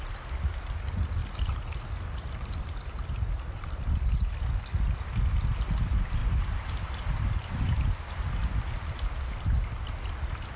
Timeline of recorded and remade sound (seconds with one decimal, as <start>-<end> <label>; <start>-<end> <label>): 0.0-10.6 recorded